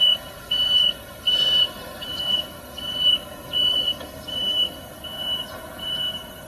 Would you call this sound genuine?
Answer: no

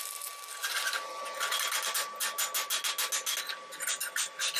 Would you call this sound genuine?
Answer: yes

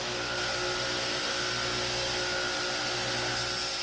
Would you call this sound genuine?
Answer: yes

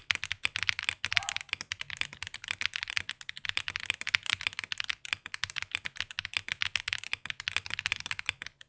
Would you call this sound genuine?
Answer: yes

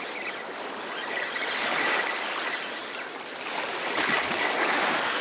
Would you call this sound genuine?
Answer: yes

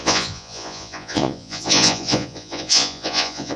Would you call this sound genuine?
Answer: no